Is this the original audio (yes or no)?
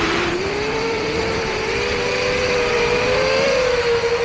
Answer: no